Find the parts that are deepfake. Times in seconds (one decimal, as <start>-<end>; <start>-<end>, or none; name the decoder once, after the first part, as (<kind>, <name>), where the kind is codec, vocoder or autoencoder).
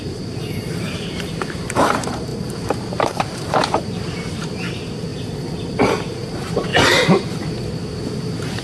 0.0-5.1 (vocoder, BigVGAN v2); 5.9-6.7; 8.2-8.6